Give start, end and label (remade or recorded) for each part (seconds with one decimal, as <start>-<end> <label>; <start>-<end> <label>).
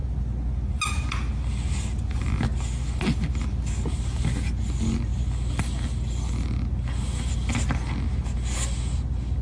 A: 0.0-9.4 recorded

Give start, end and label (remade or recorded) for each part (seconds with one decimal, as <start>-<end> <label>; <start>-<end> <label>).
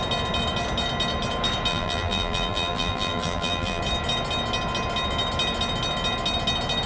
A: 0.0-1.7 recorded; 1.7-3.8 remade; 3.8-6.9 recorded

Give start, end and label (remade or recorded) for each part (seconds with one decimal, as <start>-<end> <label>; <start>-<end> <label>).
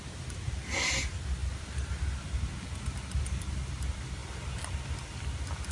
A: 0.0-1.4 recorded; 1.4-2.2 remade; 2.2-5.7 recorded